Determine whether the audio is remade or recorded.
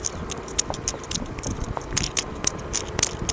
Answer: recorded